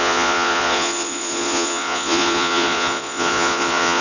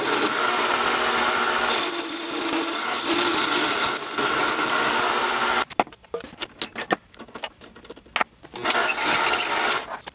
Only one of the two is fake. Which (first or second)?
first